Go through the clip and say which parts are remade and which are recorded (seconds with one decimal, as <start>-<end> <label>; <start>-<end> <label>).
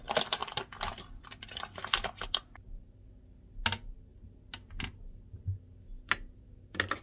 0.0-7.0 recorded